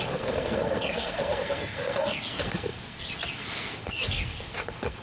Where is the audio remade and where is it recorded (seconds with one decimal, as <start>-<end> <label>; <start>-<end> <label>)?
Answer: 0.0-5.0 remade